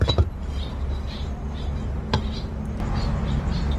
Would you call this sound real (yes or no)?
yes